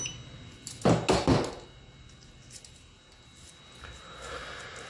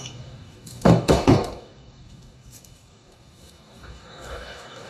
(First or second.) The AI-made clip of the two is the second